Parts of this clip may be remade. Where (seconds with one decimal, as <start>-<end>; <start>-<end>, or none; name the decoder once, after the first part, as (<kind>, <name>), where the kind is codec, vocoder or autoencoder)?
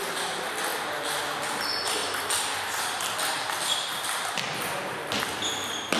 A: none